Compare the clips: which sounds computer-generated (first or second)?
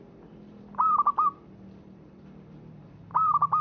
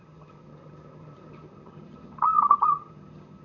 second